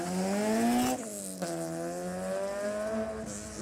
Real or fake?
real